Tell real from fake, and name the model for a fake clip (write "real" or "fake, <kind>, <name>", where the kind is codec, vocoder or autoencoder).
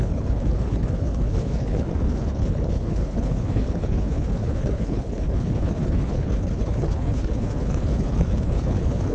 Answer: fake, codec, HILCodec